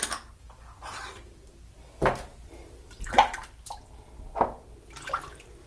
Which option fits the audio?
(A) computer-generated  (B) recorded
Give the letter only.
B